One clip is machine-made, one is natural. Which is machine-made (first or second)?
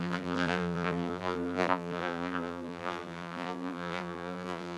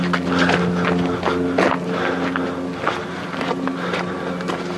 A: first